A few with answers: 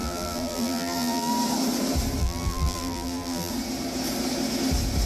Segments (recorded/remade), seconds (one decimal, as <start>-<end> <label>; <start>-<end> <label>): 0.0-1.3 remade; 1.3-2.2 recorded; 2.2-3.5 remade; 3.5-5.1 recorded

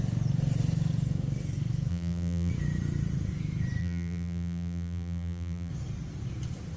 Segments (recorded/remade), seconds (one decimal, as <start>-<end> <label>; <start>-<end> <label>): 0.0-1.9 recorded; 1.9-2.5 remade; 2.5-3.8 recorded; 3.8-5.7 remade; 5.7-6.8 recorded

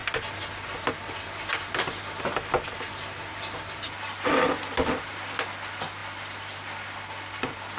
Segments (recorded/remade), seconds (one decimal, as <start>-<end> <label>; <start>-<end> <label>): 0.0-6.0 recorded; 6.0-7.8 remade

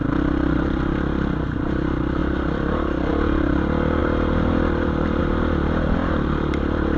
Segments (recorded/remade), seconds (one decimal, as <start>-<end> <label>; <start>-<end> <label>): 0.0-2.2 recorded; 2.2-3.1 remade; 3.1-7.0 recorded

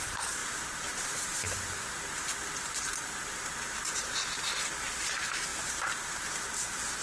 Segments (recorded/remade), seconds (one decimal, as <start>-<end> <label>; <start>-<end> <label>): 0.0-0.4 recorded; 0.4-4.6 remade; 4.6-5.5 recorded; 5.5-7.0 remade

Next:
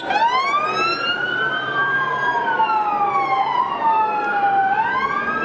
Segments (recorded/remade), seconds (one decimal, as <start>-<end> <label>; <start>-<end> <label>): 0.0-0.9 recorded; 0.9-2.3 remade; 2.3-5.4 recorded

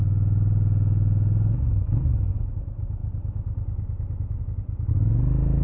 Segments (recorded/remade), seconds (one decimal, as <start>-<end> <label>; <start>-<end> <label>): 0.0-5.6 recorded

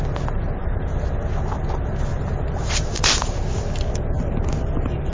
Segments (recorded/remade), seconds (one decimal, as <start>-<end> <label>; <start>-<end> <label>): 0.0-0.6 recorded; 0.6-1.2 remade; 1.2-2.1 recorded; 2.1-3.3 remade; 3.3-5.1 recorded